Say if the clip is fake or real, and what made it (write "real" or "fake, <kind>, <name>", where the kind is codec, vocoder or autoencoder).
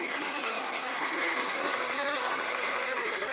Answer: fake, codec, SNAC